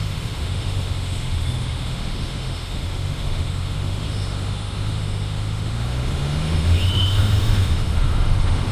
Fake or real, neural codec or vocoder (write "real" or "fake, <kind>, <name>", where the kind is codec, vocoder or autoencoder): fake, autoencoder, DAC-VAE